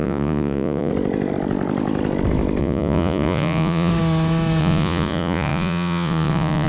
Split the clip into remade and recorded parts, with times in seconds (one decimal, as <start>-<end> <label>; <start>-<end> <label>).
0.0-0.9 remade; 0.9-2.6 recorded; 2.6-3.9 remade; 3.9-4.6 recorded; 4.6-6.7 remade